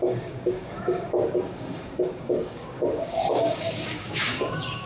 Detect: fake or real fake